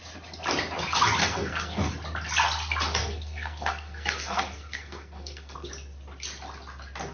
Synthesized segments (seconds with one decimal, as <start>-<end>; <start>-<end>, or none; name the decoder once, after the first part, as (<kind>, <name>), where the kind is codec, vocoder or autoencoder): 1.2-1.9 (codec, SNAC); 3.0-5.7